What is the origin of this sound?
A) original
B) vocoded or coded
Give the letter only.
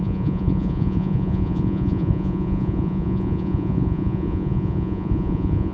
B